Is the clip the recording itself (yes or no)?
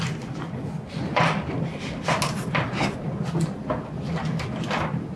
yes